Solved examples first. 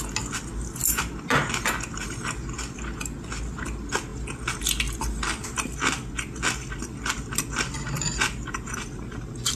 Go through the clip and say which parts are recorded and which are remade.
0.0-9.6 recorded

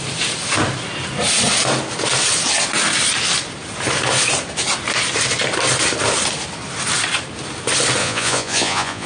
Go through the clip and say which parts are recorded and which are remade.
0.0-8.0 recorded; 8.0-9.1 remade

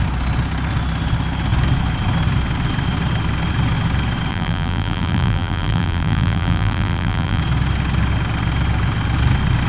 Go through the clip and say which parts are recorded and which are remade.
0.0-4.3 recorded; 4.3-7.4 remade; 7.4-9.7 recorded